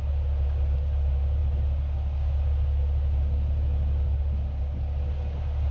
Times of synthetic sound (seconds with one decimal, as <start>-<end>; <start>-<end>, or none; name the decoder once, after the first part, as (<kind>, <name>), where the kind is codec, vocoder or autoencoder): none